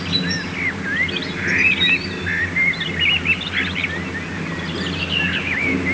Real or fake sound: real